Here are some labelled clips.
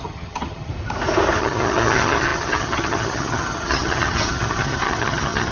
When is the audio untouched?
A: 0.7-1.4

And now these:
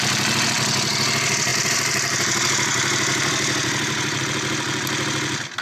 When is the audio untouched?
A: 0.0-1.5; 4.2-5.6

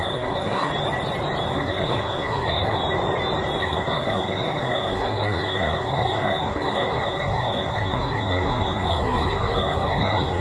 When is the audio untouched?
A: 0.7-1.5; 2.8-3.6

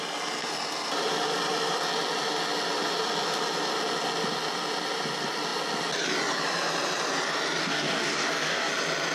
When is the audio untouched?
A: 0.0-7.6; 8.7-9.1

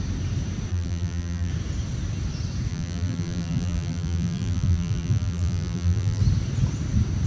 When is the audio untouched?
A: 0.0-0.7; 1.5-2.7; 6.2-7.3

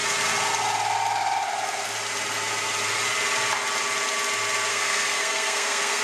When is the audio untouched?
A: 0.0-4.7

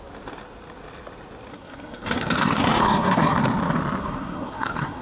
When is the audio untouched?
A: 0.0-1.5; 3.4-4.0